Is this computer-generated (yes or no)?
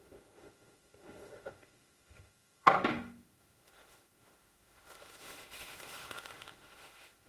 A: yes